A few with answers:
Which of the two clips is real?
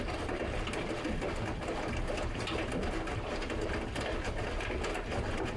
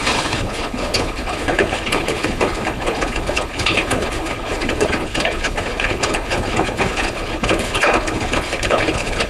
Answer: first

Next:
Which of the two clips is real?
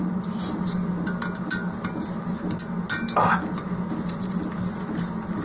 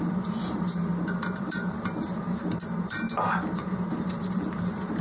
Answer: first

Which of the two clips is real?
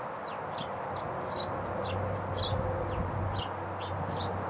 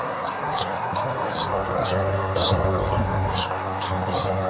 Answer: first